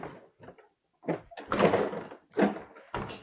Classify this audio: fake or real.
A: real